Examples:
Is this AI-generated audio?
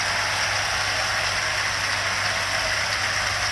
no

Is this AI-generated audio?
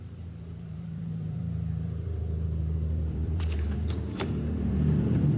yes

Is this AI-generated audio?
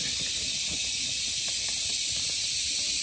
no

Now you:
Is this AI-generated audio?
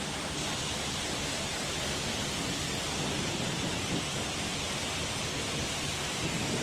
no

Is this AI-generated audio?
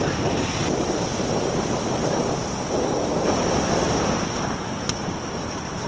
yes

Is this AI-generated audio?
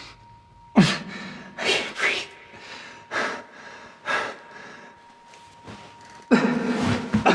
no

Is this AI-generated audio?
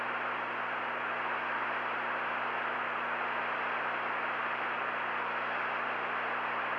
no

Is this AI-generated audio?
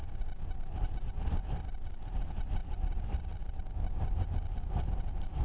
no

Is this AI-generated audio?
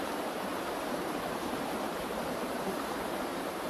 yes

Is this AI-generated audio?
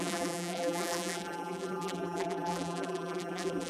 yes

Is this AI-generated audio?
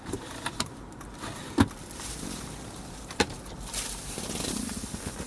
yes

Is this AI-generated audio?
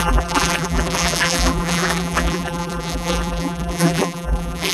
yes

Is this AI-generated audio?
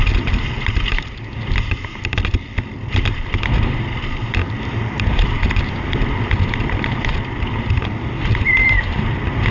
yes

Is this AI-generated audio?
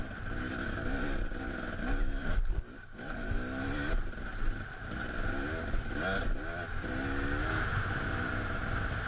no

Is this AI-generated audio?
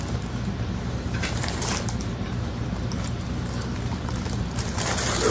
yes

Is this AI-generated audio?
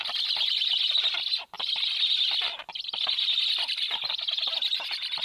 no